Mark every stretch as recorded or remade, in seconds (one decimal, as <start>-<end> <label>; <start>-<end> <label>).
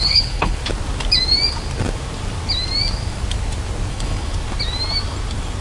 0.0-0.6 remade; 0.6-3.9 recorded; 3.9-4.3 remade; 4.3-5.6 recorded